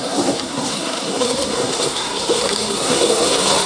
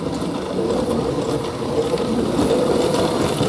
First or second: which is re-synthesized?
first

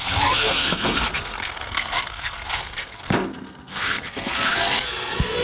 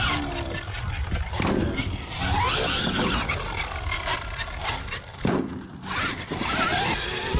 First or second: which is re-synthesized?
first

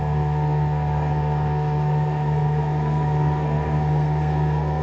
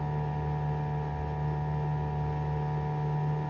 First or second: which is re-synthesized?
first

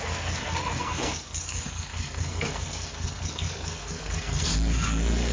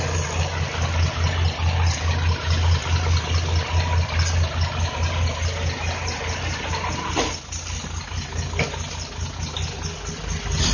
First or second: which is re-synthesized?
first